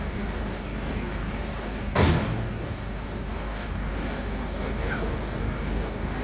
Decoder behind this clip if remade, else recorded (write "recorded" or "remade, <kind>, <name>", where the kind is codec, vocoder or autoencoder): remade, codec, DAC